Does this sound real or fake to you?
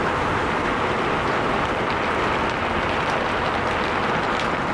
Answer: real